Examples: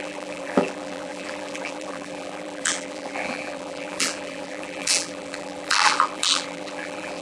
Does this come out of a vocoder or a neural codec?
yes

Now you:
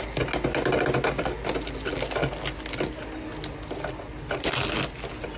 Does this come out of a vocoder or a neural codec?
no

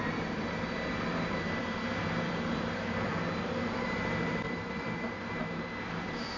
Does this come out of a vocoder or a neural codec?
yes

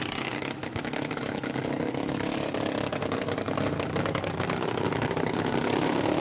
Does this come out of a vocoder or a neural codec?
yes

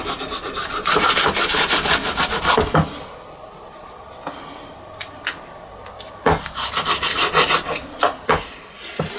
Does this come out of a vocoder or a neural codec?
no